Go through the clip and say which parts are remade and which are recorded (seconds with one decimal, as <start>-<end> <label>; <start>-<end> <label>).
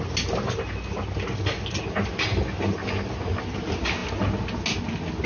0.0-5.3 recorded